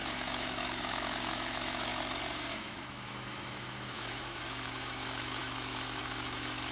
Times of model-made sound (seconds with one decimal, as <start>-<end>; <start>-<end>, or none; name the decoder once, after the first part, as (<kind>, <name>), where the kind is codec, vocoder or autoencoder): 0.0-1.9 (autoencoder, DAC-VAE); 2.5-6.7